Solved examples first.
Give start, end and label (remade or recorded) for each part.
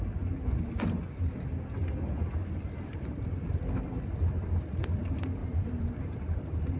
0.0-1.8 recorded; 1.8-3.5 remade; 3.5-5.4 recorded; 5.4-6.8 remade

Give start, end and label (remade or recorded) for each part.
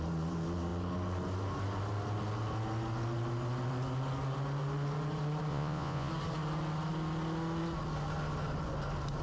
0.0-5.5 recorded; 5.5-6.1 remade; 6.1-9.2 recorded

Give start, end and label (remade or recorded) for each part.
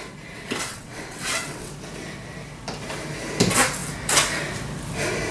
0.0-0.7 recorded; 0.7-1.7 remade; 1.7-5.3 recorded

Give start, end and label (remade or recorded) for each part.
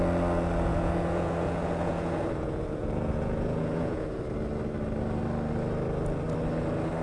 0.0-0.7 recorded; 0.7-4.2 remade; 4.2-7.0 recorded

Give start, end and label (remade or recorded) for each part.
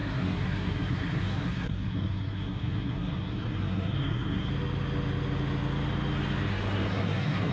0.0-4.5 remade; 4.5-6.5 recorded; 6.5-7.5 remade